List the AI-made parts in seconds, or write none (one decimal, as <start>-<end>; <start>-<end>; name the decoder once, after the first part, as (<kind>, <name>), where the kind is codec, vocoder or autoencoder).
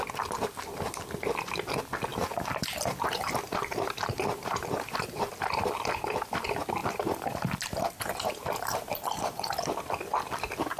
2.1-5.3 (vocoder, BigVGAN v2); 6.8-9.6